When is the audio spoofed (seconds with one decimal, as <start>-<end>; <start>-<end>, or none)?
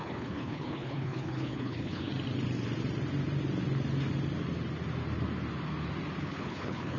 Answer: 0.0-2.1; 6.2-7.0